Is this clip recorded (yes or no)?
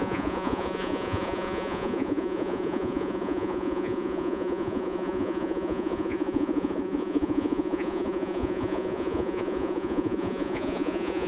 no